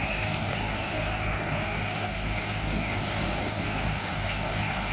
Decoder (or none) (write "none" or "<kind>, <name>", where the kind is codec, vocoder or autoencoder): codec, DAC